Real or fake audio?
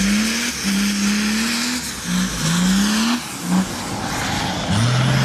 real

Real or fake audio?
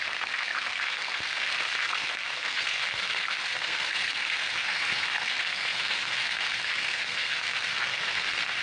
fake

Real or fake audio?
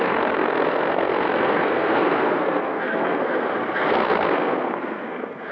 fake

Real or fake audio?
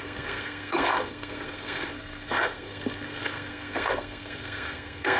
fake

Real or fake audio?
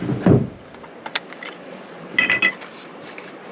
real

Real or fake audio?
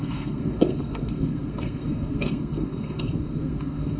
fake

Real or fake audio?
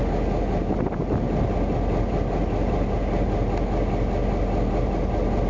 real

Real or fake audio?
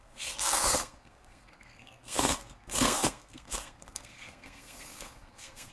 fake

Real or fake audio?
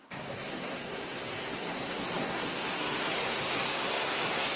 fake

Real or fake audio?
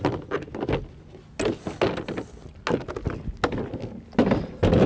real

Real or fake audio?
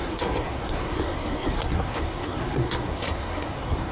fake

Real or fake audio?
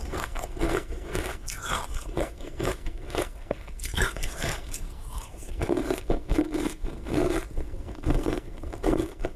fake